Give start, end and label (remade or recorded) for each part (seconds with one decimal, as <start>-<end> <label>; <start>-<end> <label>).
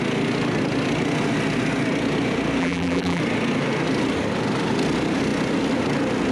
0.0-2.6 recorded; 2.6-3.2 remade; 3.2-6.3 recorded